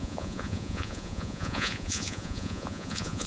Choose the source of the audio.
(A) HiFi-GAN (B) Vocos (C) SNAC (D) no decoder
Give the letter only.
B